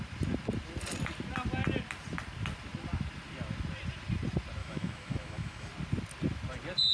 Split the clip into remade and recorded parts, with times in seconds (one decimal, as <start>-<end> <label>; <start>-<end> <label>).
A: 0.0-4.6 recorded; 4.6-5.7 remade; 5.7-6.9 recorded

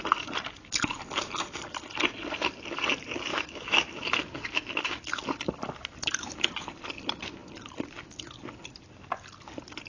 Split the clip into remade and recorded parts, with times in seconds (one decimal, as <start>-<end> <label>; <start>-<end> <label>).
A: 0.0-3.3 recorded; 3.3-5.2 remade; 5.2-9.9 recorded